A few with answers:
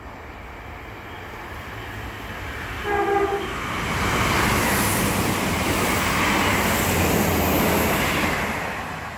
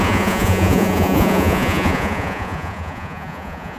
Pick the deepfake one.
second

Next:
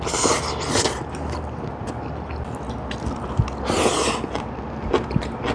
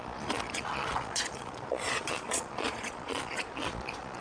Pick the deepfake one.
second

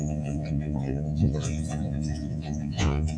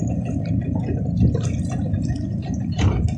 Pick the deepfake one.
first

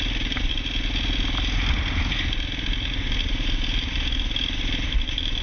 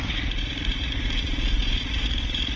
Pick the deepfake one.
second